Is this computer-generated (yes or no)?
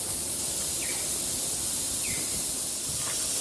no